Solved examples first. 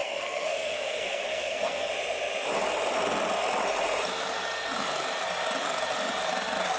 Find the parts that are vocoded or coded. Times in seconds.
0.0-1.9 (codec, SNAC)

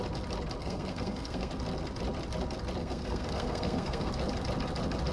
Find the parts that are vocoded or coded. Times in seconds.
0.6-1.5 (codec, SNAC); 2.8-4.1

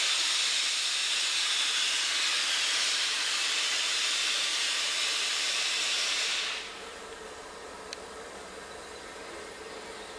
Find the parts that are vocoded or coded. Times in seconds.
none

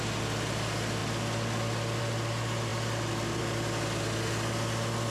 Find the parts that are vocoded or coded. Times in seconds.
none

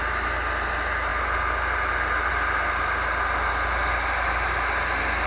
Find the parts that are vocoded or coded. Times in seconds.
none

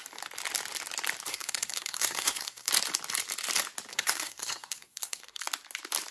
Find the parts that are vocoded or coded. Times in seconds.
1.3-2.7 (codec, SNAC); 3.9-5.4